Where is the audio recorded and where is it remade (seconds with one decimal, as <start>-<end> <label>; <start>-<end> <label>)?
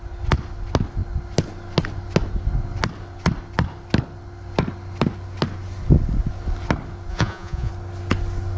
0.0-7.1 recorded; 7.1-7.7 remade; 7.7-8.6 recorded